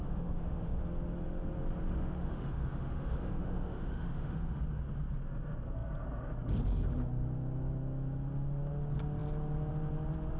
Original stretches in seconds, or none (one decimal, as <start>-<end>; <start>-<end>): 0.8-2.2; 4.6-10.4